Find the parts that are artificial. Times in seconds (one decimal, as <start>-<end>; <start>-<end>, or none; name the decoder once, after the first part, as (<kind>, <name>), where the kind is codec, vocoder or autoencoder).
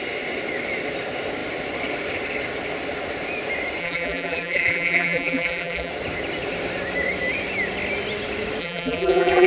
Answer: 3.8-5.9 (vocoder, BigVGAN v2); 8.6-9.5